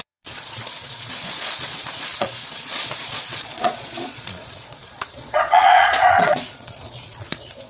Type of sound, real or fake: fake